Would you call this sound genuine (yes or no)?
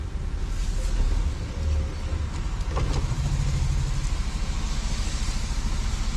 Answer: yes